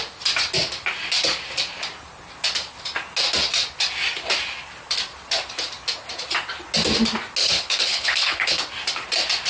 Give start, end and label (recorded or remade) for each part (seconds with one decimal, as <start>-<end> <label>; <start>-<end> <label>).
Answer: 0.0-7.4 recorded; 7.4-8.6 remade; 8.6-9.5 recorded